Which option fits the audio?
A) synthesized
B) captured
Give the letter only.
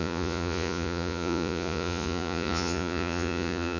A